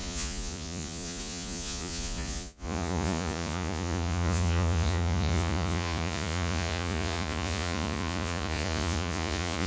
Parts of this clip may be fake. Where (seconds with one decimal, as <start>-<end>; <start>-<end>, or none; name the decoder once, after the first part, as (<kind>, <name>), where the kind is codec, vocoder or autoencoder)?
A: 0.0-9.7 (vocoder, Vocos)